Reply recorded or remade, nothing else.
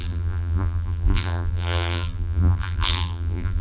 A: remade